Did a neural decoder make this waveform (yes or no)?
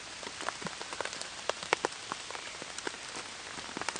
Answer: no